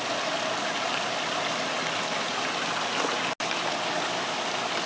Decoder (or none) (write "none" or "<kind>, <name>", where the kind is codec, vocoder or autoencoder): none